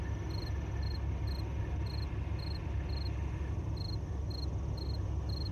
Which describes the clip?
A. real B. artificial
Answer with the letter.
A